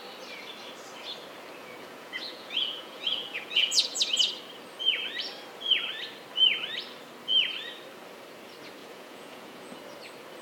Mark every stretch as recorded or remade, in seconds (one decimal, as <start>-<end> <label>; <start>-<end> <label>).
0.0-1.6 recorded; 1.6-4.0 remade; 4.0-8.8 recorded; 8.8-9.8 remade; 9.8-10.4 recorded